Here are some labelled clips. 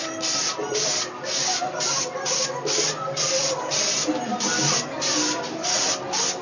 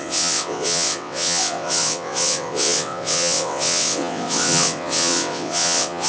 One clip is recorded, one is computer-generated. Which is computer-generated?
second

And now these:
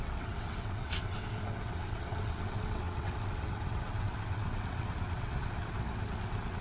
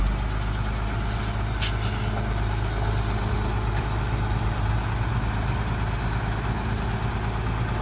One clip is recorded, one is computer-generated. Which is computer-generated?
first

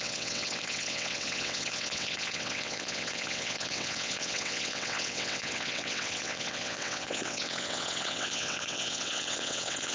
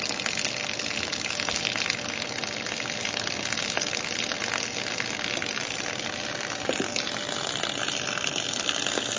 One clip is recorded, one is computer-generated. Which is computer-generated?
first